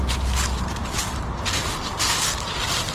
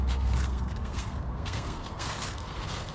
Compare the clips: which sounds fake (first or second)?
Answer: second